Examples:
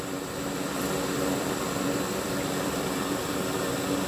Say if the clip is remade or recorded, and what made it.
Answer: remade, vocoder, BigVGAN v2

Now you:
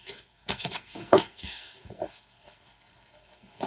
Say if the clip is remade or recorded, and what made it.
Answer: remade, codec, SNAC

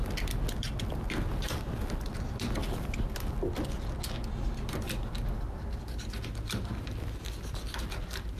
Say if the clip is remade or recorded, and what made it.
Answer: recorded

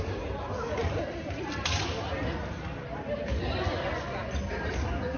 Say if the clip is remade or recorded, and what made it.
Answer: recorded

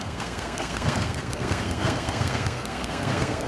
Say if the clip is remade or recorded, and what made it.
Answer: remade, codec, SNAC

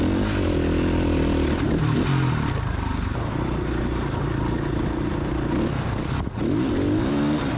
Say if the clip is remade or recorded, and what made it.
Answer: recorded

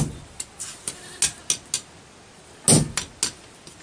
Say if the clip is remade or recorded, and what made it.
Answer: recorded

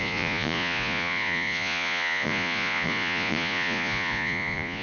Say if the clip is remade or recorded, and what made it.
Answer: remade, vocoder, Vocos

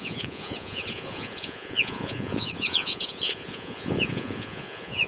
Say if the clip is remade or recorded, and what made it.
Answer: remade, vocoder, Vocos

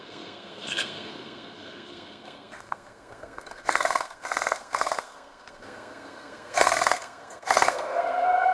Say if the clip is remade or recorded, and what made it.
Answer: remade, codec, SNAC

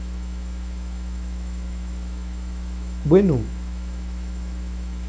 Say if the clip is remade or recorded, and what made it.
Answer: remade, autoencoder, DAC-VAE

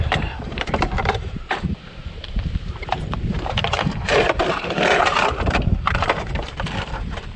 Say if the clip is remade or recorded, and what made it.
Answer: remade, vocoder, BigVGAN v2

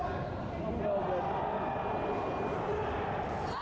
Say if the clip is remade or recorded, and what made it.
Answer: recorded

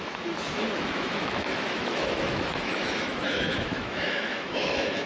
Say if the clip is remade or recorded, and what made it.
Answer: remade, autoencoder, DAC-VAE